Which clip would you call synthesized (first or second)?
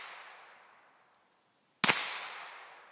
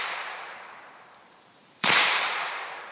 second